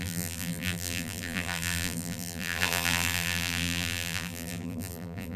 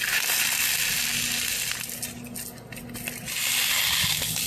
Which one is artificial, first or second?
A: first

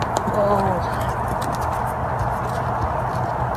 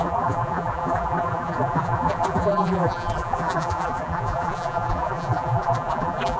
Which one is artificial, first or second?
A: second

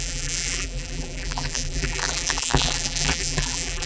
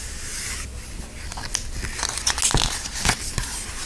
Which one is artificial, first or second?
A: first